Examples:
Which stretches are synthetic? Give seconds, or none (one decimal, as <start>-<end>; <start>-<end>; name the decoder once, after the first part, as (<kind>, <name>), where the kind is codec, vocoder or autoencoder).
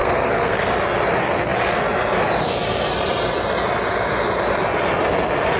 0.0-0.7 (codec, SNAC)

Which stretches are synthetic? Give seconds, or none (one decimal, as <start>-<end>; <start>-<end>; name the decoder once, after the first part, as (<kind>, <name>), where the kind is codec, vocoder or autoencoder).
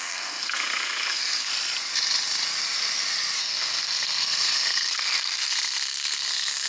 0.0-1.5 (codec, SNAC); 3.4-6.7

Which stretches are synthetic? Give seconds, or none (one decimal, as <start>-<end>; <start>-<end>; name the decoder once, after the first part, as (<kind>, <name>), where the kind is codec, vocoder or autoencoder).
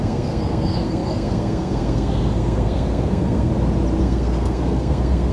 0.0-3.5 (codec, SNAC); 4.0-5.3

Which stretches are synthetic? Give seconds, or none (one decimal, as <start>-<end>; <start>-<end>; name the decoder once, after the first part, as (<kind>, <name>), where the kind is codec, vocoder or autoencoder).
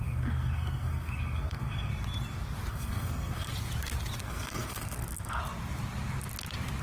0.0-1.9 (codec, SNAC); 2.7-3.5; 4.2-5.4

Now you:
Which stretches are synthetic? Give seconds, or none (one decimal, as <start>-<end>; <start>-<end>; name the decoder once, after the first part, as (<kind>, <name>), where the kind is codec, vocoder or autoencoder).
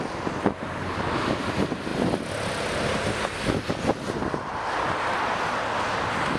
none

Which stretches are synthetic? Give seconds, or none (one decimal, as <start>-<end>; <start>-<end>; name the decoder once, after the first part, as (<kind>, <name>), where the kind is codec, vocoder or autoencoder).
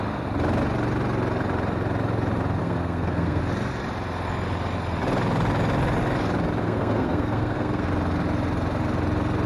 2.6-3.4 (codec, SNAC); 6.6-7.9